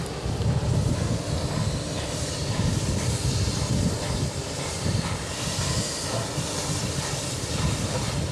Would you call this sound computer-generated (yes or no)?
no